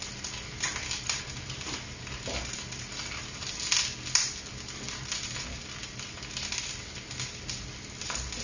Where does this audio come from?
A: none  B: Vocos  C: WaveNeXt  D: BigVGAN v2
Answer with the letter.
A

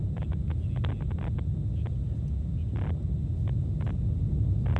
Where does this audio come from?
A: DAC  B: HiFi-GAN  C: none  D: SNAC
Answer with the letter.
C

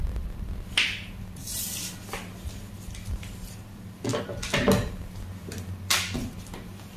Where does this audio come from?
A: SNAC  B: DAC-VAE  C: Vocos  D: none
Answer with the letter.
D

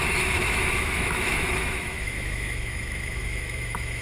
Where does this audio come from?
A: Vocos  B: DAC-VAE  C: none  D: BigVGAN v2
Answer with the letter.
B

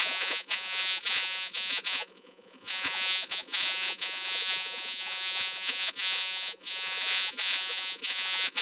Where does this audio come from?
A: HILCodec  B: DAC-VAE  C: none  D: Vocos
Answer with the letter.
D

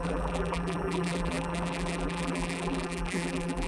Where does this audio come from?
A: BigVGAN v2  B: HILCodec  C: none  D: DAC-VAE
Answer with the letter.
A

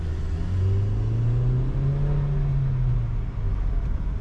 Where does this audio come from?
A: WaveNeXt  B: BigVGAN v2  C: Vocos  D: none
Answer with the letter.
D